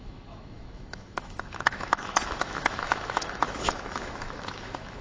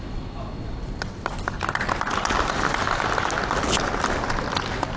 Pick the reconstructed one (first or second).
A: first